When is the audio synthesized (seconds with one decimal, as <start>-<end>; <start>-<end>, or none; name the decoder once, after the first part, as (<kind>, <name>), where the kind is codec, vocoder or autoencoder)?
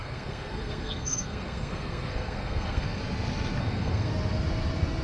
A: 0.0-3.0 (codec, SNAC); 3.6-4.1